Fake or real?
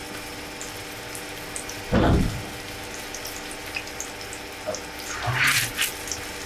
real